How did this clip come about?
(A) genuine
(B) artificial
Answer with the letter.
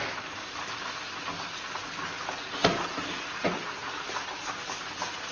A